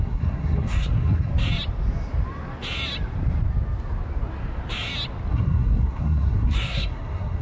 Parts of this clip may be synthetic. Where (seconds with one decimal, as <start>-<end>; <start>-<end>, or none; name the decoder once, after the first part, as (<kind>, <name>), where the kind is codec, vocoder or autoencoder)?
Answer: 0.0-1.3 (codec, SNAC); 5.3-7.4